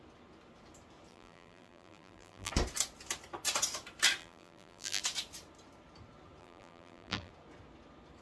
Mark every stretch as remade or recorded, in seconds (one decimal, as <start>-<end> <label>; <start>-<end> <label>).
0.0-1.1 recorded; 1.1-2.5 remade; 2.5-4.2 recorded; 4.2-5.0 remade; 5.0-6.4 recorded; 6.4-7.3 remade; 7.3-8.2 recorded